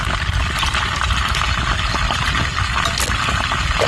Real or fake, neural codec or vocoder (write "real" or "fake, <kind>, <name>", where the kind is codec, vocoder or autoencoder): real